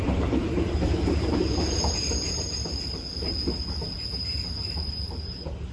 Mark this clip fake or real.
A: fake